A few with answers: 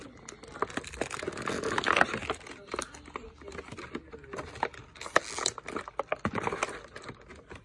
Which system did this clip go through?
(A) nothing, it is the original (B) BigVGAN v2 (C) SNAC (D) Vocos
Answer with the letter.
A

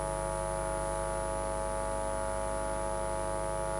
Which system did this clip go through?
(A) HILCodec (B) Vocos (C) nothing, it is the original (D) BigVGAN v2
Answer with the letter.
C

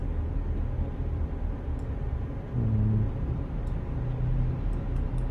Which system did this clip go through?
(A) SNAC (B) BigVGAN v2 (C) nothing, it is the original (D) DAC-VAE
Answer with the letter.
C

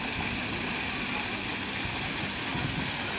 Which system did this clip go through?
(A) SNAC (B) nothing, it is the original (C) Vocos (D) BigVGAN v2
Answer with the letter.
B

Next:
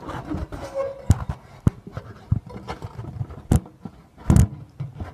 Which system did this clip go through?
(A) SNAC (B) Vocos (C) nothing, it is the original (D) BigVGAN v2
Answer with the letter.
C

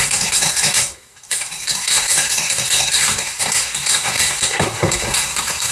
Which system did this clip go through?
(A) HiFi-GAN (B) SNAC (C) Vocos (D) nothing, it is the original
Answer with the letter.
B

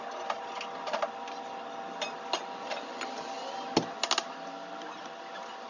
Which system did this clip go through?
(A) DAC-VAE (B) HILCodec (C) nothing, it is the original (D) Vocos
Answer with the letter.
C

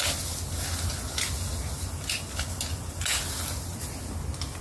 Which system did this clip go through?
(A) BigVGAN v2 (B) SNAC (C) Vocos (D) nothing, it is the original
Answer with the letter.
D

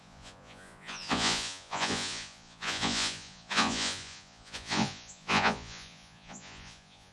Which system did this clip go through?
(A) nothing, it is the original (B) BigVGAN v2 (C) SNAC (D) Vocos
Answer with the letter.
D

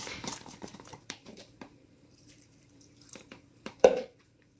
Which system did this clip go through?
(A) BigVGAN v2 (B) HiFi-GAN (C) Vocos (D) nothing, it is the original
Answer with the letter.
A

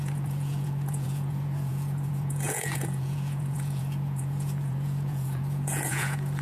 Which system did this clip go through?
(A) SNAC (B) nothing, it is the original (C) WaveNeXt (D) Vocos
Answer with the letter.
D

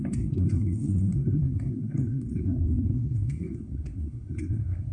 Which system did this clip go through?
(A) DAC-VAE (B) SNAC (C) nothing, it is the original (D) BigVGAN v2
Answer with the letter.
B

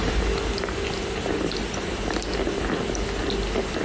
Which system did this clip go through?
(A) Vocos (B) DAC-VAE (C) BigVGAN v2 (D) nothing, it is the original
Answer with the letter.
D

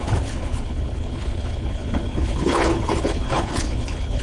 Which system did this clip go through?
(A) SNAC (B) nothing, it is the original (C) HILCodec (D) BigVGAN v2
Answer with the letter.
C